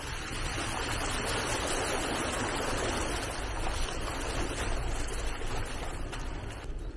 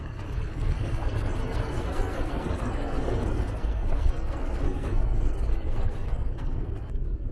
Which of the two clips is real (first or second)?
first